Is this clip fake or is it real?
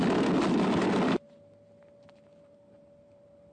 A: fake